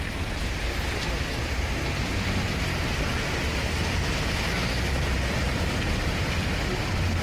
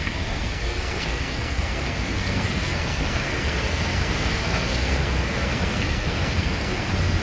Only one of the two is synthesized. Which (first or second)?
second